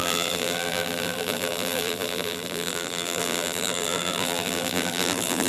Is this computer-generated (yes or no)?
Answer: yes